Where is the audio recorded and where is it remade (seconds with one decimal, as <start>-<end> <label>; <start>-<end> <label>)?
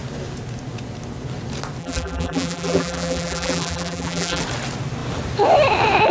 0.0-1.8 recorded; 1.8-4.4 remade; 4.4-6.1 recorded